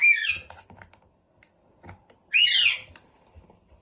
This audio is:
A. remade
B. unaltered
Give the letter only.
B